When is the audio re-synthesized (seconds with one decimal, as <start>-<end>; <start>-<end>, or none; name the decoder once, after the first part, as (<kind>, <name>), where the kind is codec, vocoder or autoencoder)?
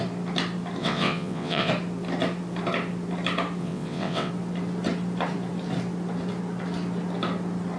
0.8-1.7 (vocoder, WaveNeXt); 3.6-4.3